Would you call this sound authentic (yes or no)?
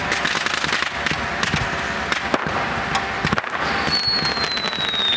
yes